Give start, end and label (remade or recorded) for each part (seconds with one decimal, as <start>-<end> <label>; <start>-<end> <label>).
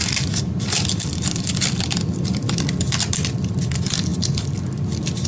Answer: 0.0-5.3 recorded